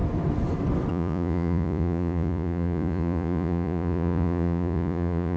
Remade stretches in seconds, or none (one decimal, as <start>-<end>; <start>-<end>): 0.9-5.4